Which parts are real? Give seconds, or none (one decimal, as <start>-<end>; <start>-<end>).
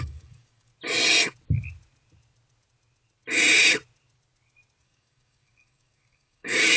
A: 0.7-4.8